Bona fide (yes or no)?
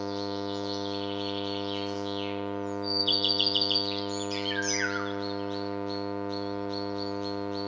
no